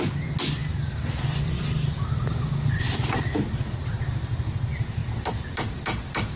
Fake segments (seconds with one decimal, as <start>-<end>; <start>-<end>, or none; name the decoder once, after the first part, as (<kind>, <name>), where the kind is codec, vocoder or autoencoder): none